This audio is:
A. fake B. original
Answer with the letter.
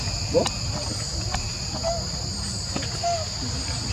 B